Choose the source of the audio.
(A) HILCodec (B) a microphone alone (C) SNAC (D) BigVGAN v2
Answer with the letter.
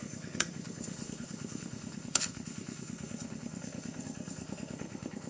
C